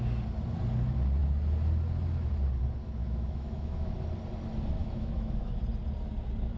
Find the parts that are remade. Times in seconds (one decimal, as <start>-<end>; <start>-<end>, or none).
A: 3.0-3.9; 4.8-5.6